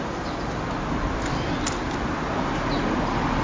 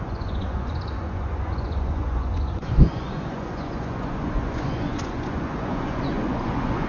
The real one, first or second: first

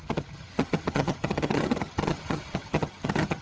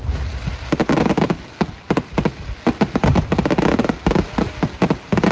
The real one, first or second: second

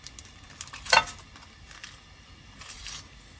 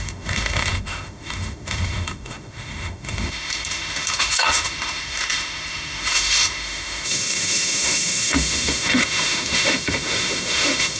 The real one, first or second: first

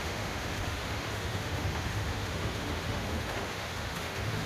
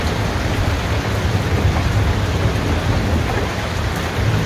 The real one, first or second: second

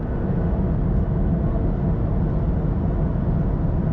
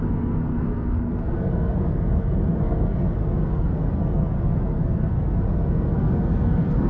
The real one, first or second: first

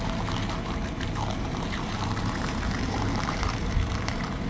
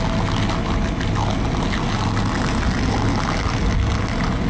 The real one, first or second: second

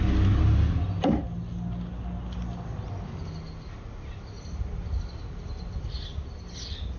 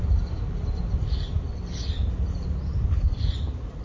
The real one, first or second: first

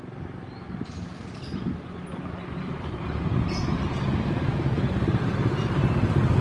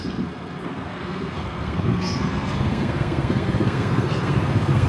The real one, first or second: first